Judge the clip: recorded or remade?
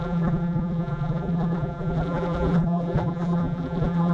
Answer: remade